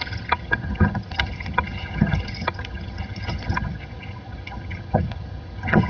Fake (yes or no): yes